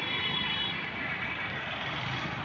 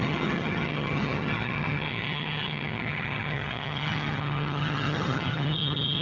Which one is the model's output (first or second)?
second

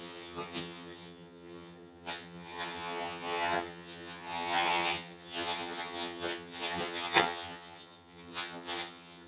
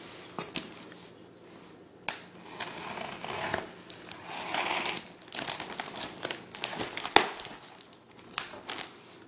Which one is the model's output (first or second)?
first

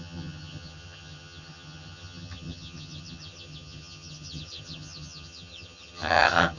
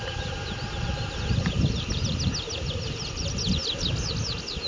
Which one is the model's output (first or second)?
first